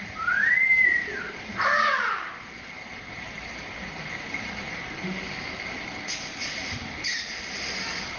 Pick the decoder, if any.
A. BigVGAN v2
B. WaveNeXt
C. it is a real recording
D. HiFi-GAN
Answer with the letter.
A